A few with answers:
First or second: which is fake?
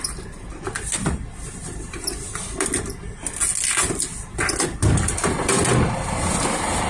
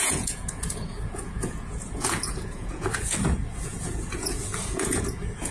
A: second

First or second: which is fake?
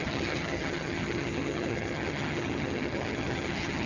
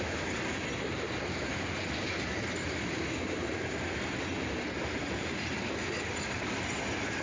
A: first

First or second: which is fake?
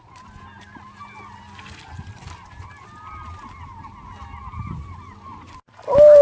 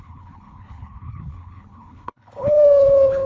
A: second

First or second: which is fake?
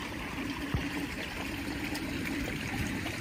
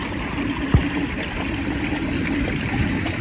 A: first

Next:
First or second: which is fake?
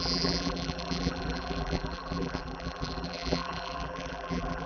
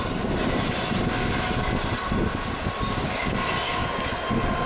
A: first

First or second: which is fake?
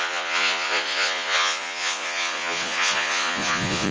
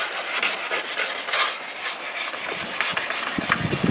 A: first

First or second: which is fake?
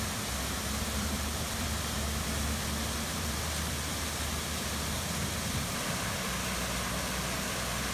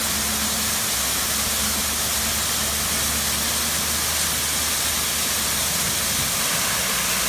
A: first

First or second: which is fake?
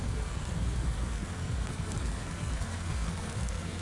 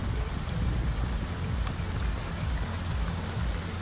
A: first